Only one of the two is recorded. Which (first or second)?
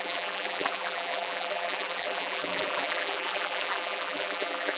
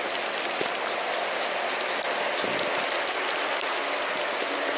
second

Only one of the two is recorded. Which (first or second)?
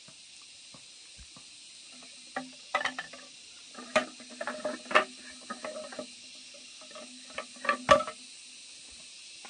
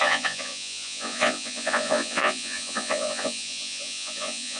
first